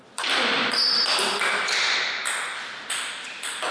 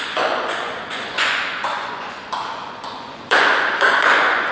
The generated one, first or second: second